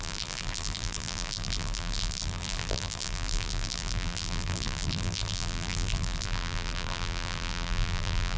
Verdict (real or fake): fake